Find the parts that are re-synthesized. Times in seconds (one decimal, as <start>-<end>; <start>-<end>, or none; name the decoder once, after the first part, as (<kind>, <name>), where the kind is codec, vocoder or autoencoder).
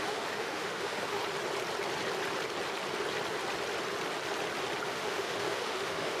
0.0-1.2 (autoencoder, DAC-VAE); 4.9-6.2